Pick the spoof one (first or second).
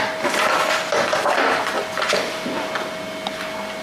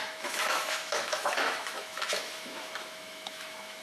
second